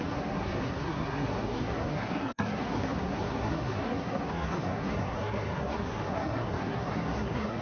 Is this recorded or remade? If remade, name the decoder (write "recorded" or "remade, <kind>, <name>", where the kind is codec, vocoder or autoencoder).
remade, codec, SNAC